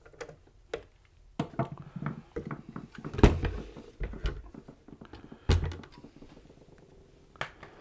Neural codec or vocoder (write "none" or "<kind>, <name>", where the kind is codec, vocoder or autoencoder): none